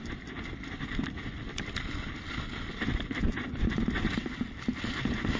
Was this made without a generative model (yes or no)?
yes